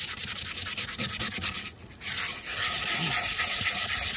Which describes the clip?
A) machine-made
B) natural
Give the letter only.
B